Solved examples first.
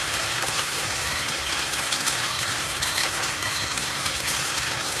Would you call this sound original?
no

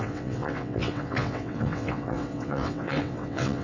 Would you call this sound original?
no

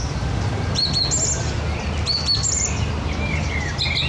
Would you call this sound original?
yes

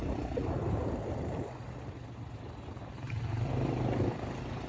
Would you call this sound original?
no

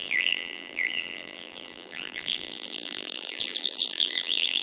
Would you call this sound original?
no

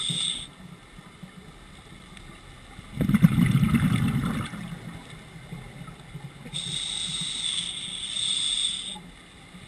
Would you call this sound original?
yes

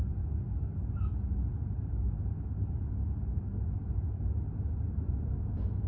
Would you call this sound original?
yes